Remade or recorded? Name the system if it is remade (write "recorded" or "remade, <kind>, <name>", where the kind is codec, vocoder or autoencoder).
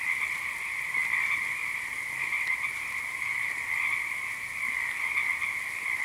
recorded